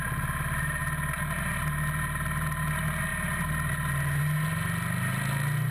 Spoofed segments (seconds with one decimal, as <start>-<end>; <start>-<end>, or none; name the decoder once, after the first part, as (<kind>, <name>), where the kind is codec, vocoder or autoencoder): none